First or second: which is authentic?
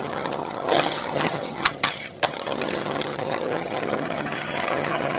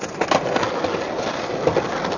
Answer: second